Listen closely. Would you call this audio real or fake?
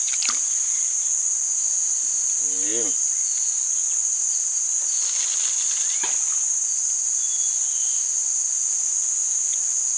real